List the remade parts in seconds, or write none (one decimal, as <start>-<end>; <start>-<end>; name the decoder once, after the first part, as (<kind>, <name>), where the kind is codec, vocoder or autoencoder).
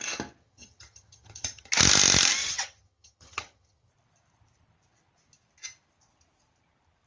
0.4-1.7 (vocoder, HiFi-GAN); 2.4-3.9